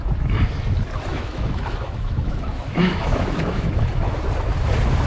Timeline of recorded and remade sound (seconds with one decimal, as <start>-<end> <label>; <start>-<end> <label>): 0.0-1.1 recorded; 1.1-4.2 remade; 4.2-5.1 recorded